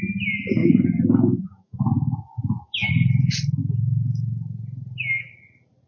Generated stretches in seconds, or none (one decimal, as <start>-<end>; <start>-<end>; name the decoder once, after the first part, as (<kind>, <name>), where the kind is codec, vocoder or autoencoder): 0.6-2.9 (autoencoder, DAC-VAE)